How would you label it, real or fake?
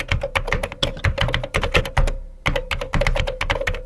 real